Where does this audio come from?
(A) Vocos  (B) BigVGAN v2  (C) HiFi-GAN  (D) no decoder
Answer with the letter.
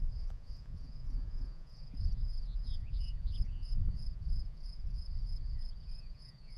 A